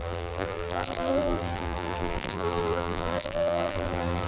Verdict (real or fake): fake